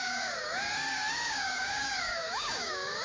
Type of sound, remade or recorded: remade